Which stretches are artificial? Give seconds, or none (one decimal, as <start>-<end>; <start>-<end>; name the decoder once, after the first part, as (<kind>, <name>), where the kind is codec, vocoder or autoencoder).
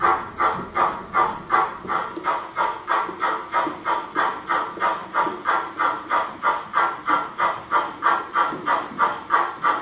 none